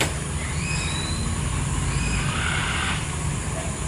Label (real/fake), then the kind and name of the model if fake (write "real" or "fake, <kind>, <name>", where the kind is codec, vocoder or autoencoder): fake, vocoder, BigVGAN v2